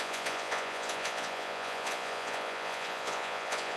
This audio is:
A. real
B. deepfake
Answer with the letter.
B